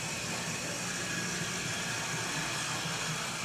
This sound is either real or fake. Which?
real